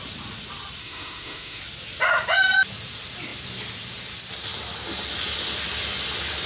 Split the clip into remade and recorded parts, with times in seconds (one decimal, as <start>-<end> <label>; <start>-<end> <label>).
0.0-0.8 recorded; 0.8-1.6 remade; 1.6-6.5 recorded